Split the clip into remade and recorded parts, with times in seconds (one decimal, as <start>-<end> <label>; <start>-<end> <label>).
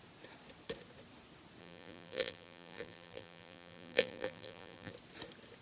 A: 0.0-1.6 recorded; 1.6-4.9 remade; 4.9-5.6 recorded